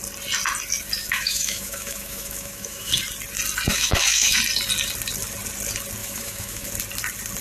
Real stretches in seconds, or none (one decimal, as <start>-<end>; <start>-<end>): 0.0-1.0; 2.9-3.7; 4.4-6.0; 6.7-7.4